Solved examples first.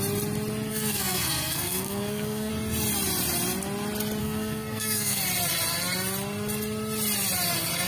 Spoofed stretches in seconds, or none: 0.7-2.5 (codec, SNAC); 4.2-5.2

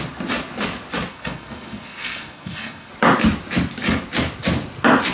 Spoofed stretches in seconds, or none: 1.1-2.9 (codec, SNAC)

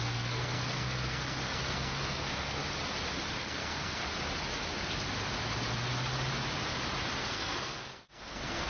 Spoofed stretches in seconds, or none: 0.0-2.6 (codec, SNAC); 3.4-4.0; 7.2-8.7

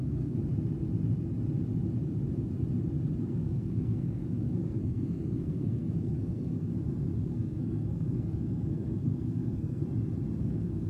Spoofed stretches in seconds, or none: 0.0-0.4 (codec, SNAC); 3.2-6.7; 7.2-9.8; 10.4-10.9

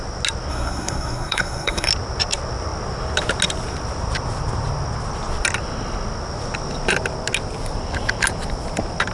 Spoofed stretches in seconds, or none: 0.5-1.9 (codec, SNAC)